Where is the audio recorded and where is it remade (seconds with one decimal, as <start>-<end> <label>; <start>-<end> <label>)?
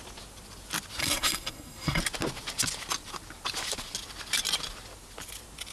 0.0-1.0 recorded; 1.0-2.0 remade; 2.0-5.7 recorded